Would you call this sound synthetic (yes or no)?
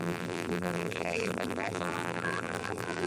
yes